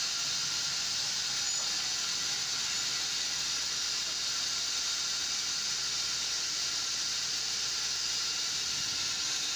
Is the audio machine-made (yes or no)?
no